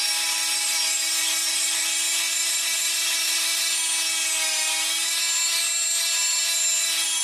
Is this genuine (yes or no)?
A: yes